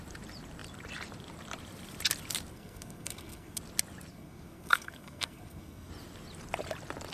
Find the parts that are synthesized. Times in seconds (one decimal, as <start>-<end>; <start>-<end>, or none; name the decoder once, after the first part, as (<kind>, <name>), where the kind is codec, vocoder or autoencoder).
2.5-3.6 (codec, SNAC); 4.1-5.9